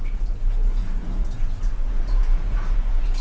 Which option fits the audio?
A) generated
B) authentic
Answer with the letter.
A